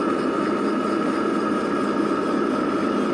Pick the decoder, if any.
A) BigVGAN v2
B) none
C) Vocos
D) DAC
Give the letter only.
B